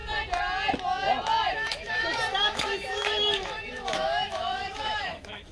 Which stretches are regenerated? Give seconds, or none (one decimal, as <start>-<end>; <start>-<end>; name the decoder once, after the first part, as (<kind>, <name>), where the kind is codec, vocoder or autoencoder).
1.5-5.5 (autoencoder, DAC-VAE)